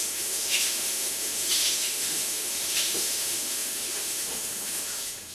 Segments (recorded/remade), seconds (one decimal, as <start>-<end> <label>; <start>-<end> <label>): 0.0-5.3 remade